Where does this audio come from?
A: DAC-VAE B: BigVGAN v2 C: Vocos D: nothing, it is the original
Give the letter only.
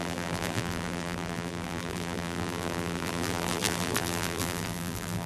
B